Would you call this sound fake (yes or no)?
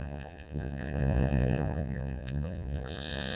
yes